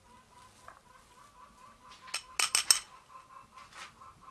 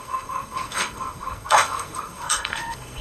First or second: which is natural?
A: first